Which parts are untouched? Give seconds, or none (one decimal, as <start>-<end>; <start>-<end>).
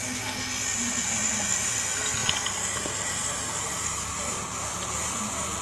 0.0-5.6